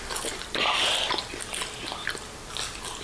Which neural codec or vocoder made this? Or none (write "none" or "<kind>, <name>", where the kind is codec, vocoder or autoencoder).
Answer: none